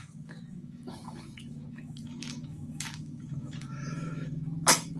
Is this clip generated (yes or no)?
yes